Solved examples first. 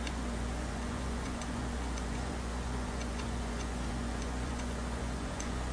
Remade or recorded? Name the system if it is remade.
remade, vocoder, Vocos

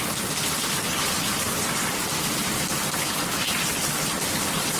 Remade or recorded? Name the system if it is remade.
recorded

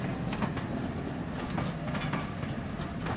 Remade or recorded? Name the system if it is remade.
recorded